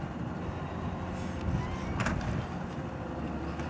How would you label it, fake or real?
real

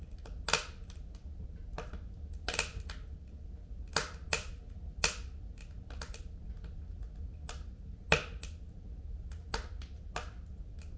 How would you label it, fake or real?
real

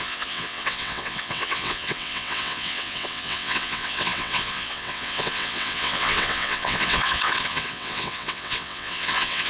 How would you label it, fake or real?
fake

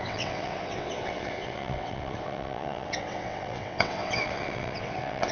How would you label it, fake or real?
fake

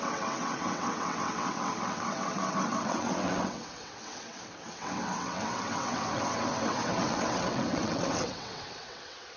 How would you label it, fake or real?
fake